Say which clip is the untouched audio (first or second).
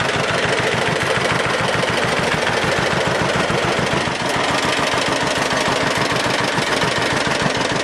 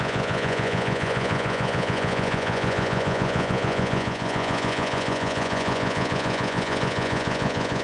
first